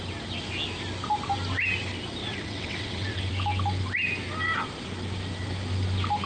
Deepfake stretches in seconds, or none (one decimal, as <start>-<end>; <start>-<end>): 2.2-3.3